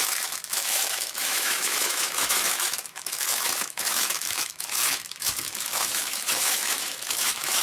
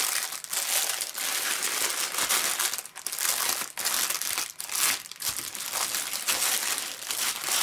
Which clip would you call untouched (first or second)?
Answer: second